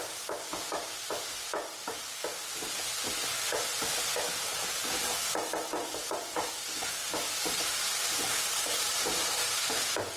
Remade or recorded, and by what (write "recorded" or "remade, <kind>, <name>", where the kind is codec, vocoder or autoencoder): recorded